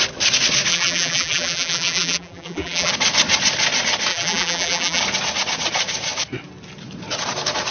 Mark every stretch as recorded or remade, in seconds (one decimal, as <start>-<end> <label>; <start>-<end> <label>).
0.0-0.7 recorded; 0.7-2.9 remade; 2.9-4.1 recorded; 4.1-5.0 remade; 5.0-7.7 recorded